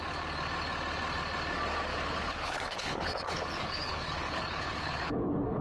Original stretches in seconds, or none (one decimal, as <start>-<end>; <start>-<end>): 0.0-1.9